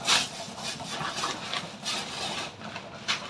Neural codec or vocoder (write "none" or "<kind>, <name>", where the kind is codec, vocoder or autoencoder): none